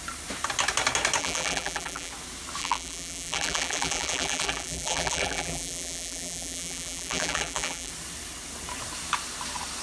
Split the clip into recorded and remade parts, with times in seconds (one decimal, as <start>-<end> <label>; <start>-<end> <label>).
0.0-1.2 recorded; 1.2-2.1 remade; 2.1-2.6 recorded; 2.6-7.9 remade; 7.9-9.8 recorded